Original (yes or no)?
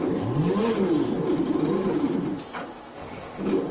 yes